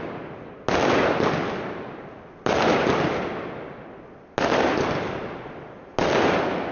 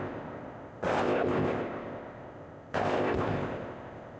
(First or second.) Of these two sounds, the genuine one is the first